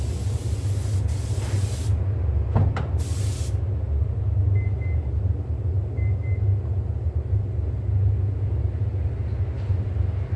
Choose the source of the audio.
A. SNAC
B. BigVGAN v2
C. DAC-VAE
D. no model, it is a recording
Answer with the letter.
D